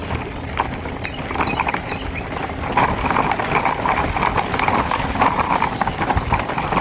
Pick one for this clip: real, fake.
real